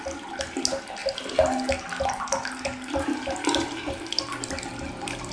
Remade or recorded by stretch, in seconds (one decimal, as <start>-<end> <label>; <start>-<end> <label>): 0.0-5.3 recorded